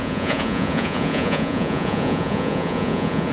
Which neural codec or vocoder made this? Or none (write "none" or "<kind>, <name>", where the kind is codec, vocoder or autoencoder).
vocoder, Vocos